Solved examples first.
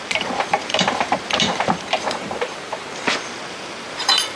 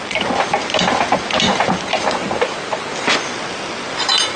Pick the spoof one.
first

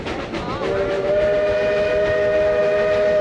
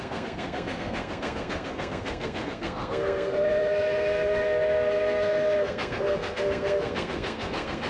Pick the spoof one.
second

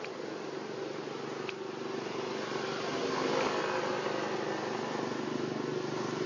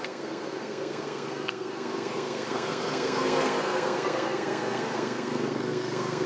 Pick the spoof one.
second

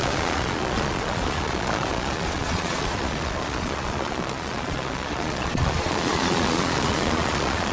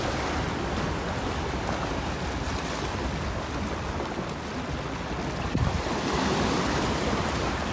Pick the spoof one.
first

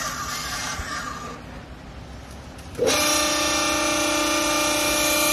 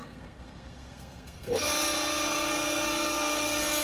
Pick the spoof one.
second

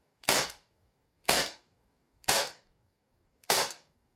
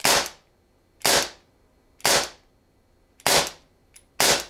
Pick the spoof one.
first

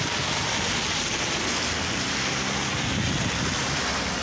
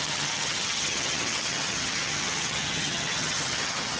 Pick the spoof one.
second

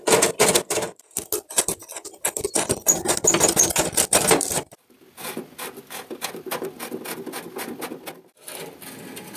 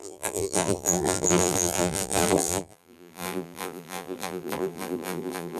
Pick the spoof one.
second